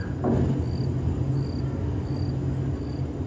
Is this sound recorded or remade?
remade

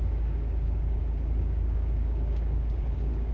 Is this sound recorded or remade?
remade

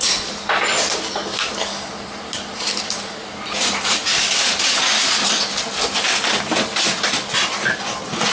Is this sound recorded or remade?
recorded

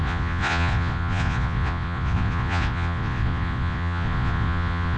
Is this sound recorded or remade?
remade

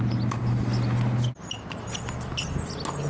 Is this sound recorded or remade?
recorded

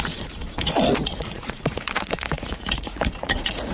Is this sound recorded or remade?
remade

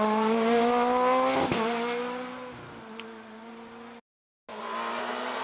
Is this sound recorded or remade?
recorded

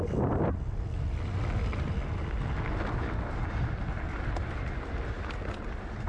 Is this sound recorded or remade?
recorded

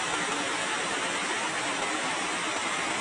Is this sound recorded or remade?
remade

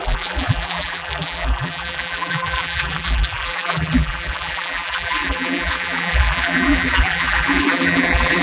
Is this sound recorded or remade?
remade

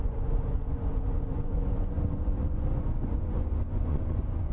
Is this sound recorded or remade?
remade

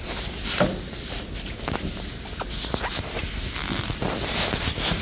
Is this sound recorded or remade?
recorded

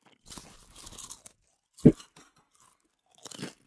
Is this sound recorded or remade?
recorded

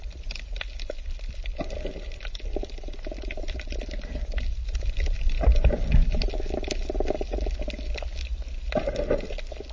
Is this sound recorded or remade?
recorded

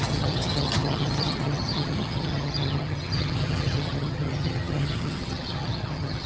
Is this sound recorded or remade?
remade